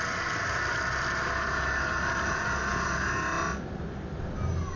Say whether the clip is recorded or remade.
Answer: recorded